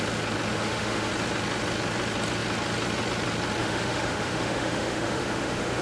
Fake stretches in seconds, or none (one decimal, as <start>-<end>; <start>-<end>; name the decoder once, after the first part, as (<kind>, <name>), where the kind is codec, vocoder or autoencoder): 0.5-1.1 (autoencoder, DAC-VAE); 3.6-5.8